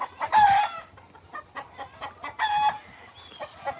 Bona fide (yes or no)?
yes